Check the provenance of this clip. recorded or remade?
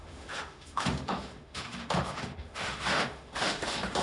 remade